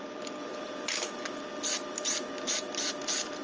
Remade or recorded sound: recorded